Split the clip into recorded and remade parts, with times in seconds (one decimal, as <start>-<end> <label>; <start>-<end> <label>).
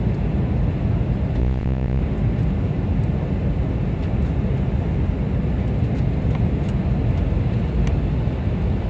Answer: 0.0-1.4 recorded; 1.4-2.0 remade; 2.0-8.9 recorded